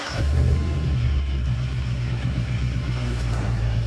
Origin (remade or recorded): remade